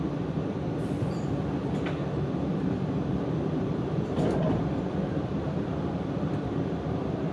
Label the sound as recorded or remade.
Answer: remade